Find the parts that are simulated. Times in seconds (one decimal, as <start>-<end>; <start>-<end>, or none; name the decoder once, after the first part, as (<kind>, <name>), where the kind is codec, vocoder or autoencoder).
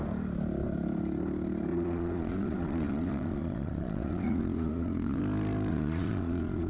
1.7-5.2 (vocoder, Vocos); 5.7-6.7